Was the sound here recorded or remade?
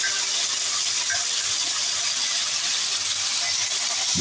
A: recorded